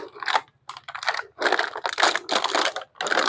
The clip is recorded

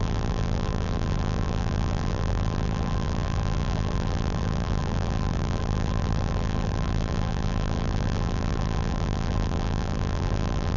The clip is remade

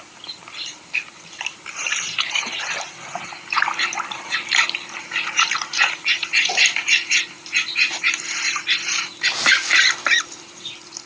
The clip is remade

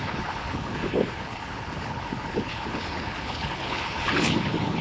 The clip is remade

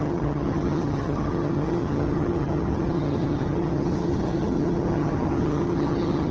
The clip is remade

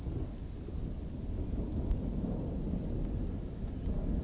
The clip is recorded